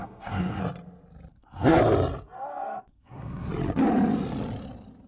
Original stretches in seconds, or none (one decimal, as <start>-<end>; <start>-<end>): 0.6-1.3; 1.8-2.9; 3.5-5.1

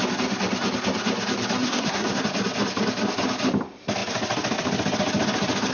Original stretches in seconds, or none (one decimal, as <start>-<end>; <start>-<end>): 0.0-1.6; 2.2-5.7

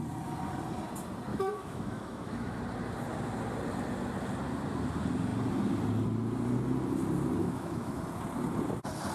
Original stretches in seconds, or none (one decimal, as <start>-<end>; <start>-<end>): 0.0-1.3; 2.6-7.4; 8.0-9.1

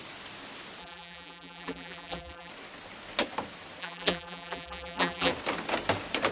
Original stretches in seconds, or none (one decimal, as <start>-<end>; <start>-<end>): 0.0-0.8; 2.5-3.8; 5.3-6.3

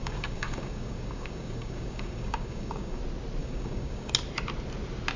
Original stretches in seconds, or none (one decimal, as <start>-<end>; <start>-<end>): 3.0-3.4; 4.1-5.2

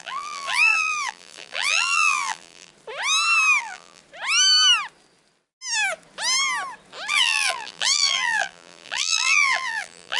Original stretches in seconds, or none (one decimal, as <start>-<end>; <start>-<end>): 2.7-3.6; 4.0-7.1

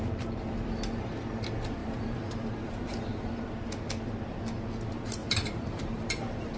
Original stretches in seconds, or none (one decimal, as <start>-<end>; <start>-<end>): 0.0-1.8; 3.4-5.2

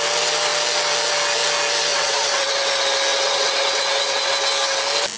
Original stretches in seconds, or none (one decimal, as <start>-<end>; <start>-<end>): 0.0-1.9; 2.7-3.1; 4.3-5.2